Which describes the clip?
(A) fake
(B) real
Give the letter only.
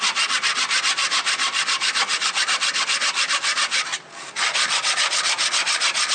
B